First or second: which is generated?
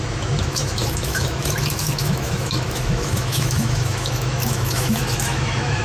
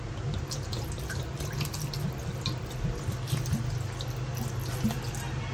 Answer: first